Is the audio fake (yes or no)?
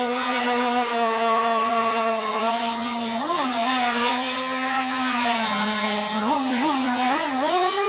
yes